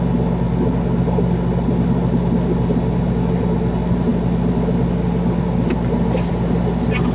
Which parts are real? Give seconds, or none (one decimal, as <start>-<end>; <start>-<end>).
0.0-7.1